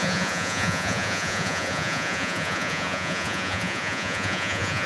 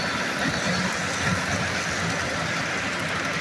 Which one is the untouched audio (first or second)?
second